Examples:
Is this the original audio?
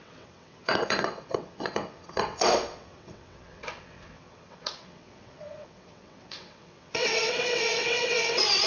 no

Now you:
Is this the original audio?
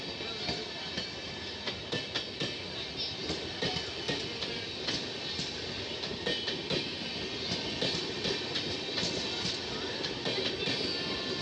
yes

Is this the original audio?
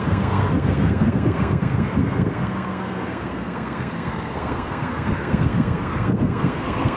no